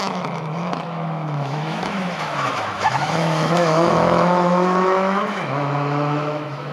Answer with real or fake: fake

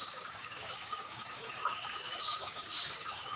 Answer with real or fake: fake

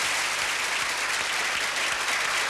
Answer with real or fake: real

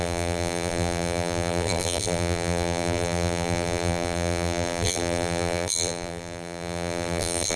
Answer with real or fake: fake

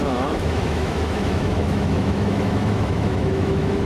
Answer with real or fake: fake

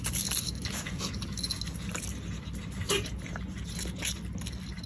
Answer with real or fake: real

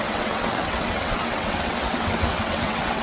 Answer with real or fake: fake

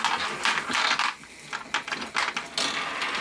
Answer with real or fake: real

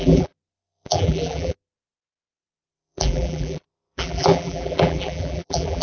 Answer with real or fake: fake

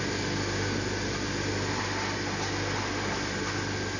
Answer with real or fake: real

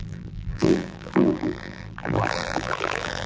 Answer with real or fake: fake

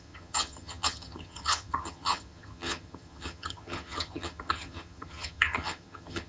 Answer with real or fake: fake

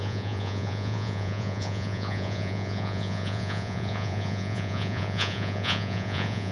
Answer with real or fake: fake